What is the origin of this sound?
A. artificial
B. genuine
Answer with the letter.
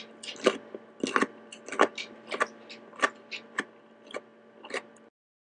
B